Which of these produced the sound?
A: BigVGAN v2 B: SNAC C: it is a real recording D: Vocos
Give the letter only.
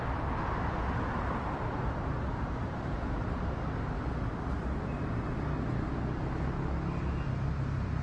C